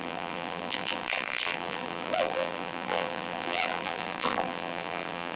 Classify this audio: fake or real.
fake